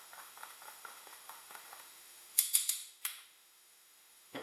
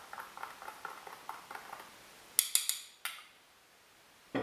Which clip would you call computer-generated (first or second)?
first